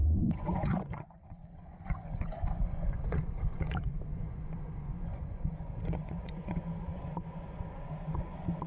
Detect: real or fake fake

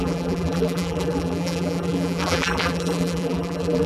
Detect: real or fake fake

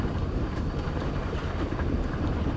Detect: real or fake fake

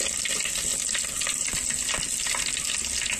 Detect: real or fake real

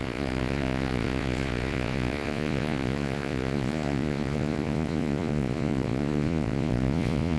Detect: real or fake fake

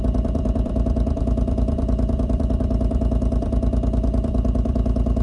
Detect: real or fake fake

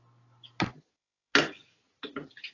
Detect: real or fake real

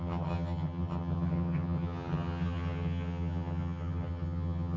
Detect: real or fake fake